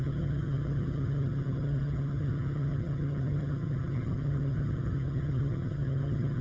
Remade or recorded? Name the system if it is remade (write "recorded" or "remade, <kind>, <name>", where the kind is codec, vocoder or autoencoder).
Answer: remade, vocoder, HiFi-GAN